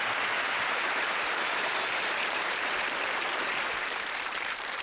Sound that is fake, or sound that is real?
fake